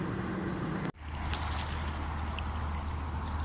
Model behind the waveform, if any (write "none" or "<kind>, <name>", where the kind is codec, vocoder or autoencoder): none